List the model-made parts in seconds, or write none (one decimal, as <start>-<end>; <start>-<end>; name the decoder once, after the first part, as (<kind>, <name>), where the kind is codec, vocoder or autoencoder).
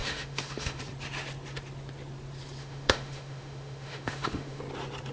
0.0-0.8 (autoencoder, DAC-VAE); 2.6-4.6